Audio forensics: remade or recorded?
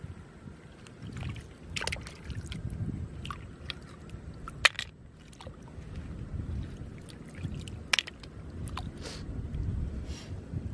recorded